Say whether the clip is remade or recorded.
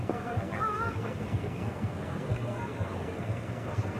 remade